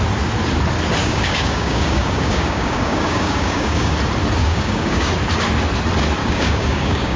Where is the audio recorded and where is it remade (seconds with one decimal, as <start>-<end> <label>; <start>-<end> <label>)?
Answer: 0.0-1.0 recorded; 1.0-3.9 remade; 3.9-4.4 recorded; 4.4-5.1 remade; 5.1-6.2 recorded; 6.2-7.2 remade